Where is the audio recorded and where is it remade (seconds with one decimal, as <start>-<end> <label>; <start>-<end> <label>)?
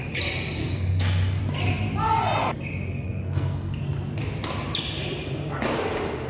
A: 0.0-0.6 recorded; 0.6-1.4 remade; 1.4-2.9 recorded; 2.9-3.8 remade; 3.8-6.3 recorded